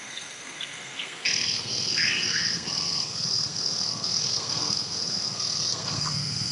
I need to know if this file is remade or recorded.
remade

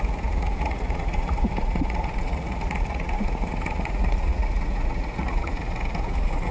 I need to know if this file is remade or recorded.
remade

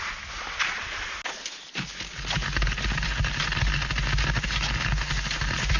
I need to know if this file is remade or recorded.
recorded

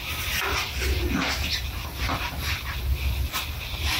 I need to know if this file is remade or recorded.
recorded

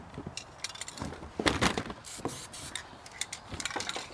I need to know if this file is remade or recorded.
remade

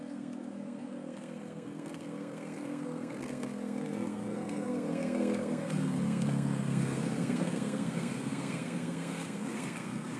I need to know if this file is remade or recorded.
remade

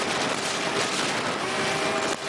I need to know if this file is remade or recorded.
recorded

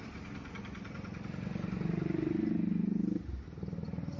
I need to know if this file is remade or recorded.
recorded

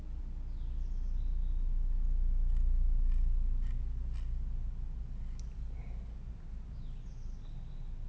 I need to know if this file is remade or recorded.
recorded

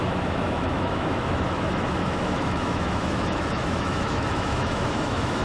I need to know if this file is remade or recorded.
remade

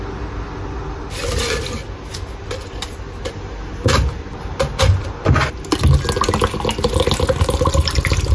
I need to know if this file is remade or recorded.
recorded